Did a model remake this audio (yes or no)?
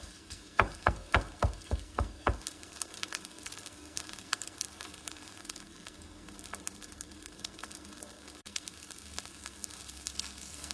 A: yes